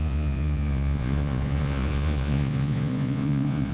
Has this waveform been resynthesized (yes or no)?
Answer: yes